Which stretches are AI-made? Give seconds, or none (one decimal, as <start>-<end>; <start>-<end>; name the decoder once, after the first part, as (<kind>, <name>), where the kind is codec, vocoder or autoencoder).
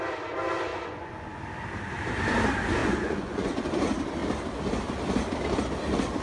0.7-1.4 (vocoder, Vocos); 2.8-3.5